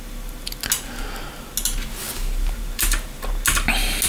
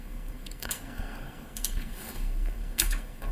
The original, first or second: first